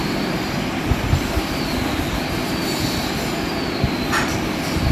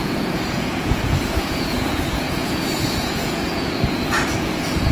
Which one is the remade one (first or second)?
second